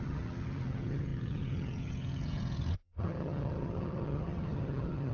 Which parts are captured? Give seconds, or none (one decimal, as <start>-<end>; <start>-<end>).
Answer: none